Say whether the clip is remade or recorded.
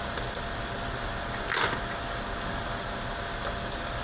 recorded